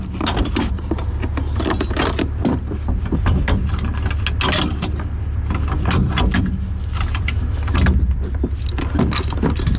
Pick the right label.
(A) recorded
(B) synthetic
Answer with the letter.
A